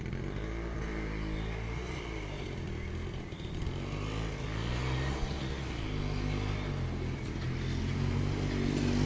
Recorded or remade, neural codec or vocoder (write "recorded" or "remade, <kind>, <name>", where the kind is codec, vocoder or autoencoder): recorded